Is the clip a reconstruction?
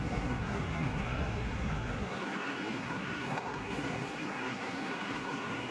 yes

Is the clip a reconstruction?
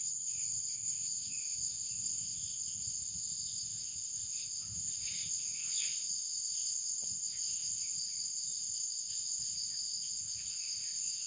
yes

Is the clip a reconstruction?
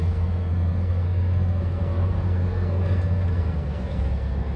yes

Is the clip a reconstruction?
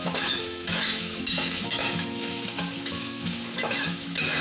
yes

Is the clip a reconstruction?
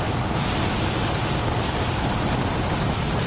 no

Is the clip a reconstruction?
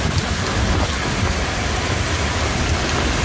no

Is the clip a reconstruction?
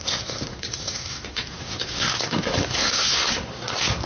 yes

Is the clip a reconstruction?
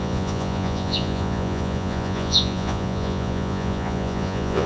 yes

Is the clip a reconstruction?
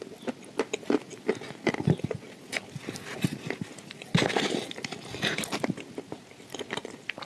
no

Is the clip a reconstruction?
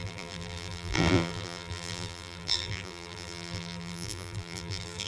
yes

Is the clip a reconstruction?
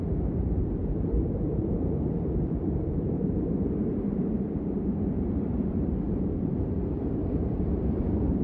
yes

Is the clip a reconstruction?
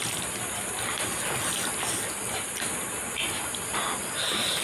no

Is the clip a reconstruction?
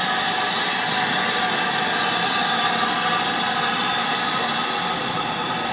no